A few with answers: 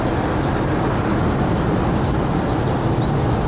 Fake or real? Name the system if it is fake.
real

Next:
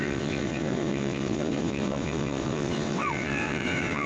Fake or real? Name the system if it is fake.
fake, vocoder, WaveNeXt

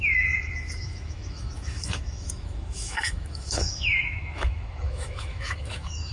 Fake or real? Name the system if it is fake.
fake, autoencoder, DAC-VAE